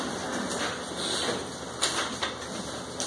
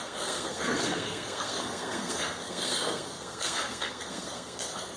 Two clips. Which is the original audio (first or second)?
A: first